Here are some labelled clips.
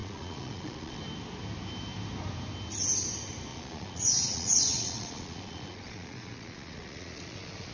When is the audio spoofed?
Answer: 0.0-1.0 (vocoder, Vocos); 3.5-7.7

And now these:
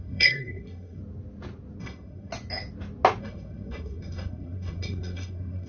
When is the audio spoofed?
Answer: 0.0-1.0 (codec, SNAC); 1.8-2.3; 3.2-5.7

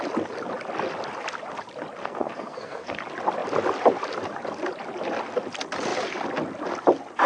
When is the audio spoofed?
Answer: 2.0-3.0 (codec, SNAC)

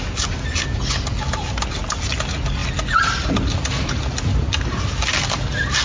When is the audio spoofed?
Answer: none